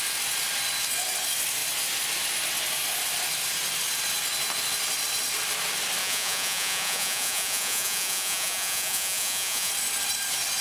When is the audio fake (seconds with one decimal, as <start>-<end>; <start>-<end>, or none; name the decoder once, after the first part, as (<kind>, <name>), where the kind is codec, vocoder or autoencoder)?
6.0-9.7 (vocoder, Vocos)